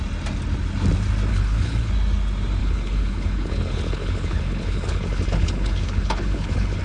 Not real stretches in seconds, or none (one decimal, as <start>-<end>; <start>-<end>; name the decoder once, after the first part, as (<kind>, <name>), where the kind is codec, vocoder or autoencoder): 1.3-1.9 (codec, HILCodec); 2.6-6.8